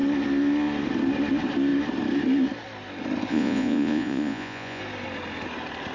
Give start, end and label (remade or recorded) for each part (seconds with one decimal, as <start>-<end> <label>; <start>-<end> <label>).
0.0-3.3 recorded; 3.3-4.8 remade; 4.8-5.9 recorded